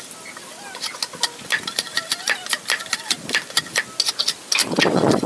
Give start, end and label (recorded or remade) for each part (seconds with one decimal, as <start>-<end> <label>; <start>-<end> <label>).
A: 0.0-4.6 recorded; 4.6-5.3 remade